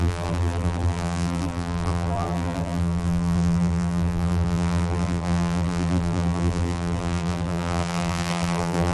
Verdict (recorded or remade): remade